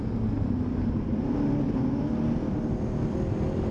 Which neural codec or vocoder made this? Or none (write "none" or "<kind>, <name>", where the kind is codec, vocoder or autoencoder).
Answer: none